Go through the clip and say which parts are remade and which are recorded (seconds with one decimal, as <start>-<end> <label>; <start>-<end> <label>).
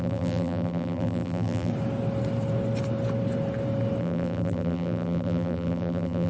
0.0-1.7 remade; 1.7-4.0 recorded; 4.0-6.3 remade